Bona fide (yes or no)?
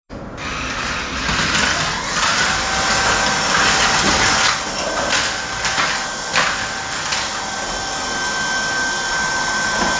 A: yes